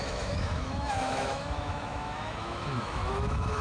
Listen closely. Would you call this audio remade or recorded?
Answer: remade